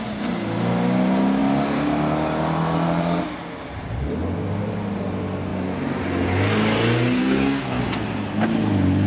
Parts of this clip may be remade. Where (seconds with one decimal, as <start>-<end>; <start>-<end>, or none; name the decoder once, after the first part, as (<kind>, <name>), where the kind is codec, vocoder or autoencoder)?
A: 7.2-7.8 (codec, DAC)